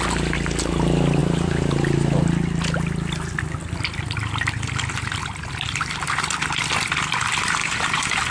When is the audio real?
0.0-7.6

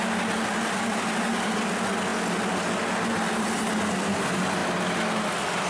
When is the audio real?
0.0-5.7

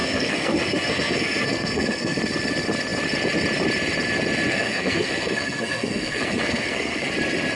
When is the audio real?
2.2-4.5; 7.1-7.6

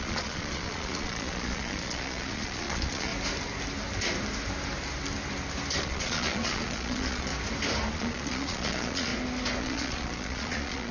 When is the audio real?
3.1-5.8; 7.3-7.9; 9.1-9.6

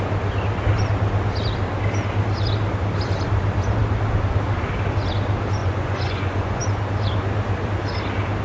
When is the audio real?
0.0-5.6; 6.6-8.4

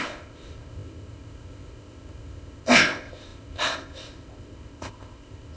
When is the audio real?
none

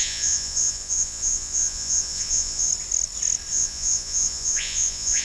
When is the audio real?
2.7-3.5

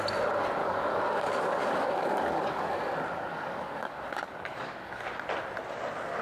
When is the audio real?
0.0-0.6; 2.9-3.3; 4.9-6.2